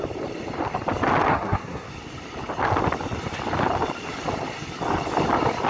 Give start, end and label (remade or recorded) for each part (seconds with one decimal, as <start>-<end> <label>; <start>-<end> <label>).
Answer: 0.0-1.3 recorded; 1.3-1.9 remade; 1.9-5.7 recorded